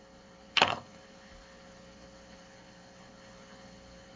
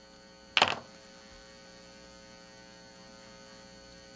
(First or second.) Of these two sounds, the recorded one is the second